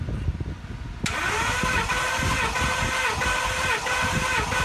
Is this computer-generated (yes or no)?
no